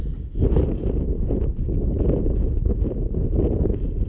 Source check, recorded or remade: recorded